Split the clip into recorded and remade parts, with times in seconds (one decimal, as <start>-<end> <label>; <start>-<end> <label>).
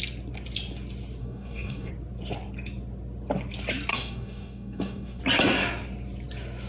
0.0-1.2 recorded; 1.2-1.9 remade; 1.9-3.9 recorded; 3.9-5.2 remade; 5.2-6.7 recorded